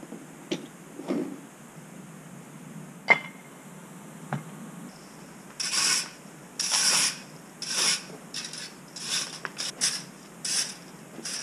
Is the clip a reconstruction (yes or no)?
no